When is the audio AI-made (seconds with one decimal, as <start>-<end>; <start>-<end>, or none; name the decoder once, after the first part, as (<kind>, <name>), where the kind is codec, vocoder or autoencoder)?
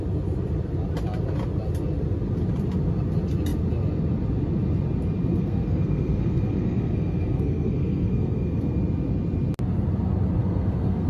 5.3-8.8 (codec, SNAC); 10.4-11.1